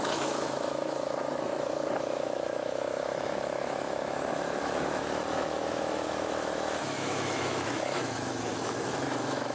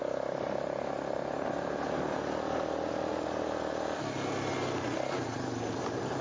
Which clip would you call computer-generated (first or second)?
first